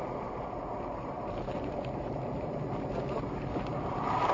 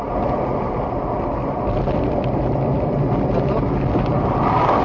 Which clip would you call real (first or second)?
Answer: second